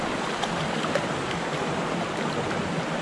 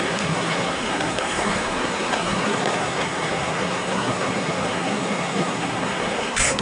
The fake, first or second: second